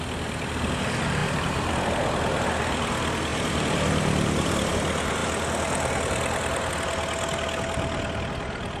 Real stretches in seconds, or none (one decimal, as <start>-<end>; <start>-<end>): 0.0-1.2; 1.7-3.3; 4.7-5.2; 6.7-8.8